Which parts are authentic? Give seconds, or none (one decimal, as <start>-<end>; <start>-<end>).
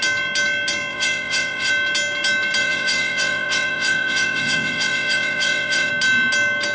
0.0-0.9; 1.7-2.6; 5.9-6.7